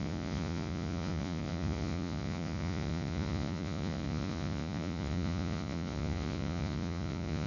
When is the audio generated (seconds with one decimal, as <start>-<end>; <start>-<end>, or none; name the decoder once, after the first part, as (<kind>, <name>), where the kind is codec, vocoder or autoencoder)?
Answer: 0.0-7.5 (vocoder, Vocos)